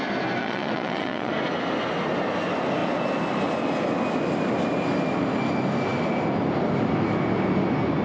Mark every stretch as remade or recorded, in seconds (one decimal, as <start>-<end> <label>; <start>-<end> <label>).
0.0-0.4 recorded; 0.4-1.3 remade; 1.3-8.0 recorded